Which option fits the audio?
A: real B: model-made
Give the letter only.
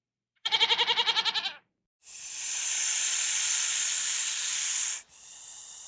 B